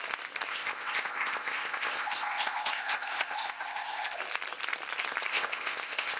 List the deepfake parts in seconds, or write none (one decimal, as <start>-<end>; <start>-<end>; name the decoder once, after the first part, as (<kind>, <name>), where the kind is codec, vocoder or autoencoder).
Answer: 0.5-4.2 (codec, ZipCodec); 5.3-6.2